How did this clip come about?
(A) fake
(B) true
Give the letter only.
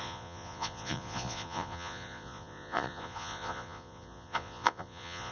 A